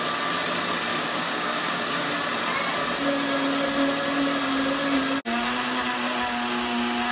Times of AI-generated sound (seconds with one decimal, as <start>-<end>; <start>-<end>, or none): 0.9-2.1